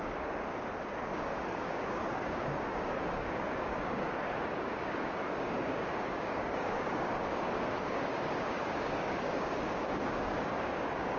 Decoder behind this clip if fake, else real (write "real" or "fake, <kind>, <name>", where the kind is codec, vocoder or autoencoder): fake, codec, DAC